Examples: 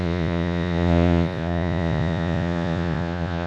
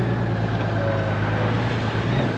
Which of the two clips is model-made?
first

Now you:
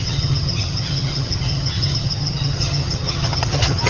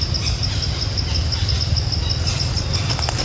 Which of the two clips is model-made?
first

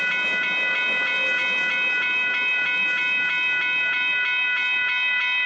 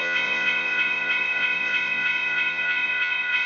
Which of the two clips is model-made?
second